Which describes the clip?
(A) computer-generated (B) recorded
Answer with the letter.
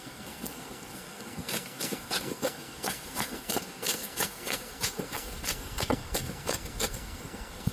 A